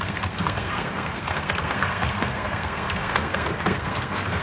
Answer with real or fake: fake